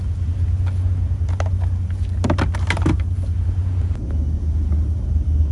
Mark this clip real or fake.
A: real